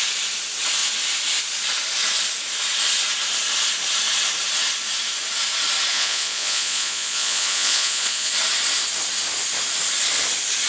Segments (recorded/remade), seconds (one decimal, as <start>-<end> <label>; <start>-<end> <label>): 0.0-5.9 recorded; 5.9-8.3 remade; 8.3-10.7 recorded